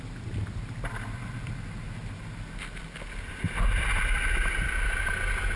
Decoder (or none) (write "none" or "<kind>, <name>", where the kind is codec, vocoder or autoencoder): none